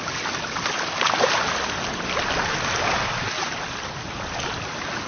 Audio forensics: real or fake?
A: real